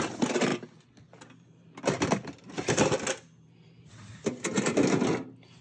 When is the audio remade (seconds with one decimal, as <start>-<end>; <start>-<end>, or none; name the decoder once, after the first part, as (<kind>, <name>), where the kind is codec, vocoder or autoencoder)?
none